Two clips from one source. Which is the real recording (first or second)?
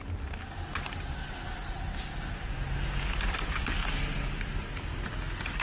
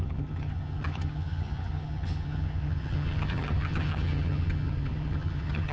first